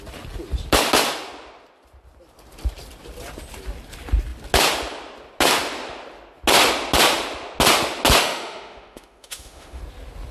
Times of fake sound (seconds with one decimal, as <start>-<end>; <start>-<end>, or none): 8.2-9.8